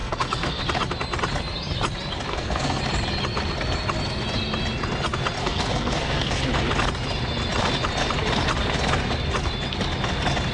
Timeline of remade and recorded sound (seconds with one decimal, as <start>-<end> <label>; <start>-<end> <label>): 0.0-0.6 remade; 0.6-2.3 recorded; 2.3-2.8 remade; 2.8-5.4 recorded; 5.4-6.4 remade; 6.4-10.5 recorded